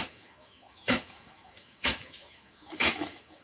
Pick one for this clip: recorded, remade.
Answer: remade